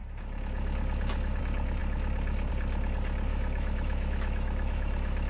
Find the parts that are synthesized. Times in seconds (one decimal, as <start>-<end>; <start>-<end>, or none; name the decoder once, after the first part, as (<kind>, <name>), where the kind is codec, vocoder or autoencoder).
3.3-5.3 (autoencoder, DAC-VAE)